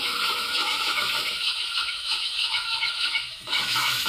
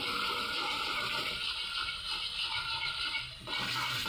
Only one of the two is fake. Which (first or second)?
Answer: first